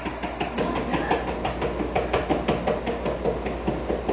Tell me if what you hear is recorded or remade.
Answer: recorded